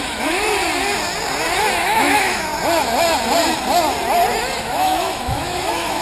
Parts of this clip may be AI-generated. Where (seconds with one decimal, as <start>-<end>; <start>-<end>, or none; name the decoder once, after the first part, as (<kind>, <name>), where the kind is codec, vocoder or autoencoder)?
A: 0.0-0.5 (autoencoder, DAC-VAE); 1.8-2.5; 4.6-6.0